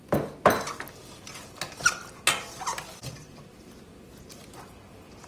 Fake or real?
real